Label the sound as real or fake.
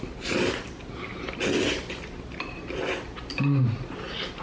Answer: fake